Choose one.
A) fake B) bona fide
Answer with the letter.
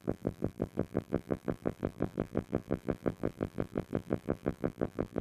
A